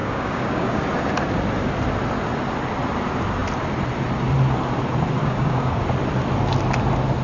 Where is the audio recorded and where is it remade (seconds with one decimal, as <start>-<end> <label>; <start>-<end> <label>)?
0.0-0.8 remade; 0.8-5.2 recorded; 5.2-5.8 remade; 5.8-7.2 recorded